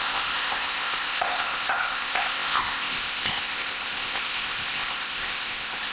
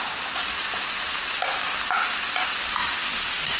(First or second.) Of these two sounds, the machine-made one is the first